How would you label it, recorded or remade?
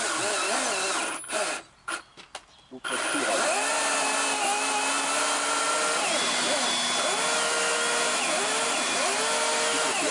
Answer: recorded